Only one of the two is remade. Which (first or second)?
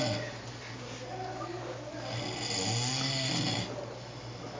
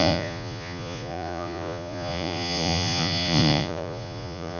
second